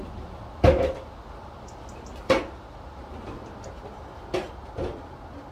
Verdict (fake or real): real